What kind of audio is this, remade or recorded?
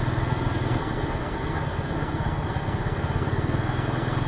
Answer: remade